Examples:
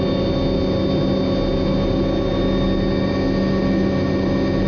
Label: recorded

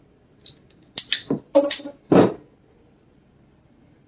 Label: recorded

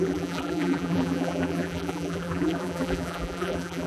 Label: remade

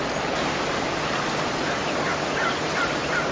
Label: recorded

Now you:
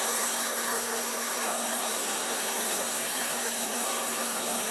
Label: remade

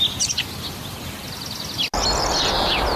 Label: recorded